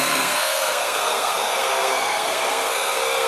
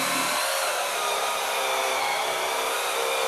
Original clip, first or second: second